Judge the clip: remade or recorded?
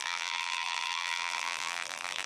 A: remade